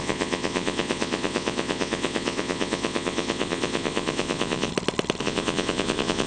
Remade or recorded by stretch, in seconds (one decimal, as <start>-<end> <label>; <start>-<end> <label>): 0.0-4.7 remade; 4.7-5.2 recorded; 5.2-6.3 remade